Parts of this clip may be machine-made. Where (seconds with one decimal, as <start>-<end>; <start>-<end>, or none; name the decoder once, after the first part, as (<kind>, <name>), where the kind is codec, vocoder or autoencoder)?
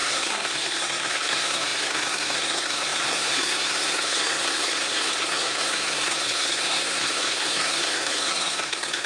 0.0-9.1 (codec, SNAC)